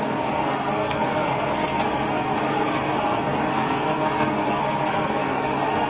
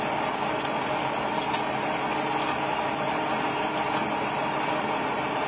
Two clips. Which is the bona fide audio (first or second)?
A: second